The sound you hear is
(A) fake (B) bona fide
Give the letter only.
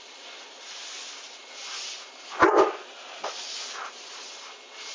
B